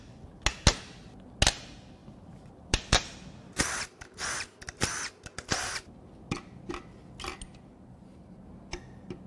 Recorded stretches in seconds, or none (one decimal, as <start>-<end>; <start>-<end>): 0.0-2.0; 6.7-9.3